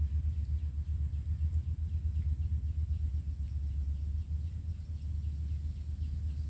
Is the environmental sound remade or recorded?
recorded